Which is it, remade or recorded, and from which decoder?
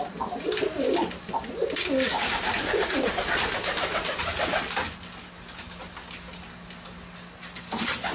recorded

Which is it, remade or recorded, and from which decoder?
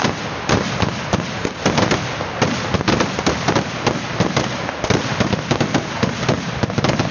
recorded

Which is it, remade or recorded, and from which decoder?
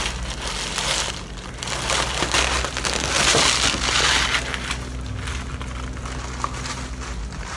recorded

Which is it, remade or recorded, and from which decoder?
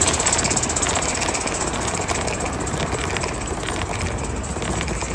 recorded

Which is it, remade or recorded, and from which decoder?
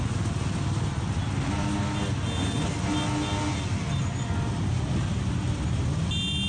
recorded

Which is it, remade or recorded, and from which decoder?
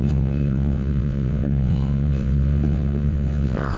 remade, vocoder, WaveNeXt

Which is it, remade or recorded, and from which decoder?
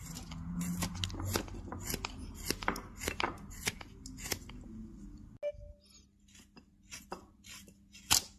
recorded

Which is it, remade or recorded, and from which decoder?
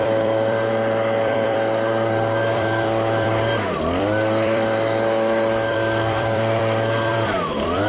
remade, vocoder, BigVGAN v2